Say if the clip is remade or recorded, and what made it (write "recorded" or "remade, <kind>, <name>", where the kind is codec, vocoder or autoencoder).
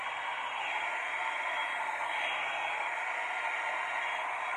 recorded